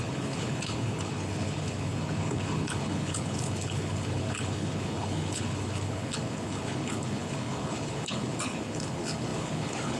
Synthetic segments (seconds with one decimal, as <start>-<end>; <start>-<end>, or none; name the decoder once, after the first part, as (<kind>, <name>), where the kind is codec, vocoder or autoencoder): 0.0-10.0 (codec, HILCodec)